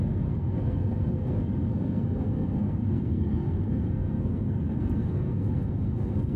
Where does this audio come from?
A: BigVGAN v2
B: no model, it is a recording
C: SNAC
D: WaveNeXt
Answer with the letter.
C